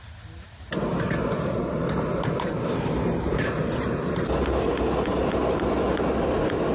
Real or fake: real